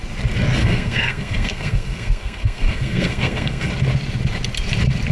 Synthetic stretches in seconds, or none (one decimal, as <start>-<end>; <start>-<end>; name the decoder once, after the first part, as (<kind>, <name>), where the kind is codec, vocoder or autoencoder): 0.6-3.7 (codec, SNAC)